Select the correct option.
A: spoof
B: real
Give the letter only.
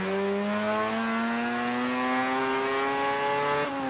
B